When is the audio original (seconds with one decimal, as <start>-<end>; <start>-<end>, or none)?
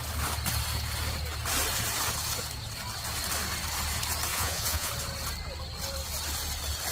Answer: 0.0-4.3; 4.9-6.9